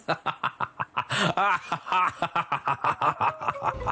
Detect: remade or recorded recorded